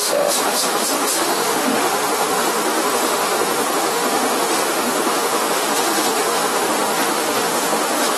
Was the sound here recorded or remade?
remade